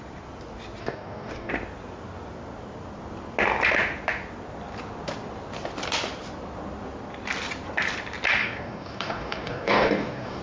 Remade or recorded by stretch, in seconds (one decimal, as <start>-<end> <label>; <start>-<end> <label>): 0.0-0.8 recorded; 0.8-1.5 remade; 1.5-8.4 recorded; 8.4-10.4 remade